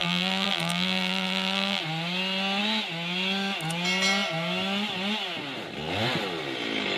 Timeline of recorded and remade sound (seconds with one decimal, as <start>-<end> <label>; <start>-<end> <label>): 0.0-1.8 remade; 1.8-7.0 recorded